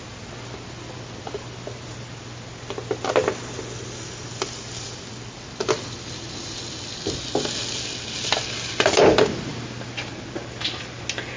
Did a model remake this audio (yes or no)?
no